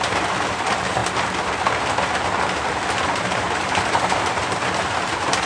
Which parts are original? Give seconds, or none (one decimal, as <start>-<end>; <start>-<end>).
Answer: 1.0-2.7